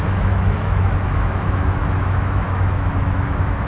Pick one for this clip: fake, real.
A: fake